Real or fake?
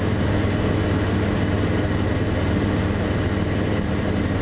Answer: real